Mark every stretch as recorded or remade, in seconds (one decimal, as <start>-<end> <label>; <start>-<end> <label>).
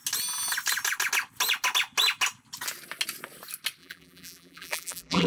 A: 0.0-3.8 recorded; 3.8-5.3 remade